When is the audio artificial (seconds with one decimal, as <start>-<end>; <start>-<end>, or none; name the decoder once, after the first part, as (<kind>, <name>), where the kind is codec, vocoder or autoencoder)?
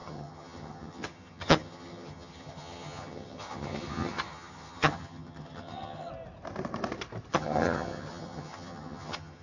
0.0-6.1 (vocoder, HiFi-GAN); 7.3-9.4